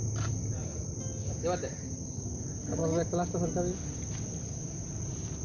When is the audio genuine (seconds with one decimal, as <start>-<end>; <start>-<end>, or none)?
1.1-2.4; 2.8-4.5